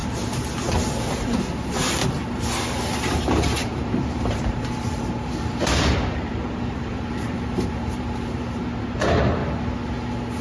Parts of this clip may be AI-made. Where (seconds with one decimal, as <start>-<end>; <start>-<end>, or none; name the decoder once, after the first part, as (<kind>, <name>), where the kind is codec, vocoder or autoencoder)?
1.1-2.0 (vocoder, BigVGAN v2); 3.2-9.4